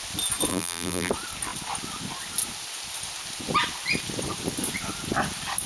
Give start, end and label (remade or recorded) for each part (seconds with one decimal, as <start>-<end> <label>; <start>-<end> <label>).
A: 0.0-0.5 recorded; 0.5-1.1 remade; 1.1-5.7 recorded